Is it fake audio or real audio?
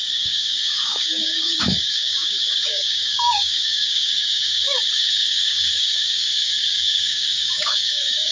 fake